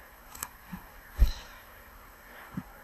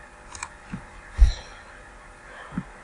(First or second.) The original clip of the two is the second